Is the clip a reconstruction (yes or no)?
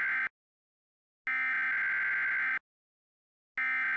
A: no